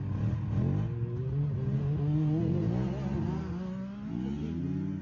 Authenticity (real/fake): real